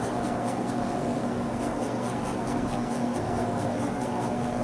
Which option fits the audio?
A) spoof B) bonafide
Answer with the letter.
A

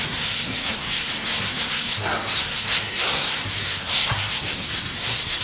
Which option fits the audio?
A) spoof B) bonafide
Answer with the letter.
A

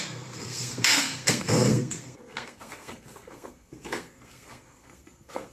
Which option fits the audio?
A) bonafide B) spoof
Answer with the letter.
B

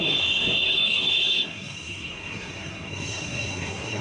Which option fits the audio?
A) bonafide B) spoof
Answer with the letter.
B